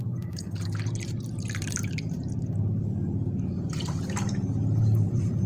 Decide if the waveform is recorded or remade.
remade